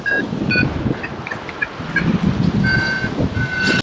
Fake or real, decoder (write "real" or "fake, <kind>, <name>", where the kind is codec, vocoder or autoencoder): real